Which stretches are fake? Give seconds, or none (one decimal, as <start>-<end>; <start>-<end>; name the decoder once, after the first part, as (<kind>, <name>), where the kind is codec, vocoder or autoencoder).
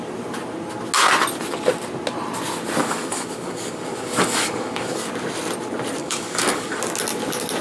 2.8-5.1 (codec, DAC); 6.0-6.8